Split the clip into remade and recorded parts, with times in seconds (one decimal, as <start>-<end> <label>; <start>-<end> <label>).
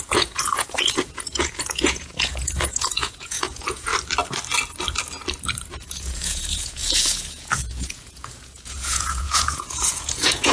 0.0-3.9 remade; 3.9-5.7 recorded; 5.7-10.5 remade